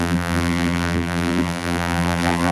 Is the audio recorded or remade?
remade